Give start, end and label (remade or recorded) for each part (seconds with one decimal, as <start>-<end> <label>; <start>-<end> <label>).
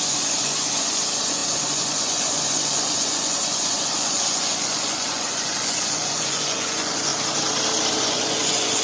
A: 0.0-7.1 remade; 7.1-8.0 recorded; 8.0-8.8 remade